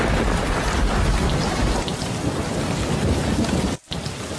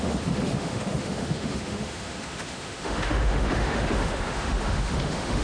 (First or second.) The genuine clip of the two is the first